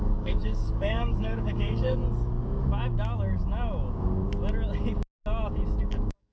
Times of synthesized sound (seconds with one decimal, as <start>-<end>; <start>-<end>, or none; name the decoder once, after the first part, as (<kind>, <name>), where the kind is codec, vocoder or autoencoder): 0.0-2.0 (codec, DAC); 5.8-6.3